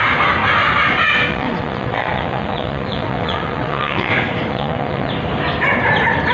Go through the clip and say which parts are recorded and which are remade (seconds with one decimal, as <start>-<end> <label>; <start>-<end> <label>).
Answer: 0.0-1.3 recorded; 1.3-4.1 remade; 4.1-4.5 recorded; 4.5-5.1 remade; 5.1-6.3 recorded